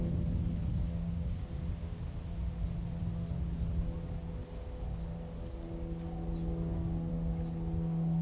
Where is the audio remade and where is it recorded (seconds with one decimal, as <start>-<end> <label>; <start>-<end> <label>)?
0.0-0.7 recorded; 0.7-1.5 remade; 1.5-8.2 recorded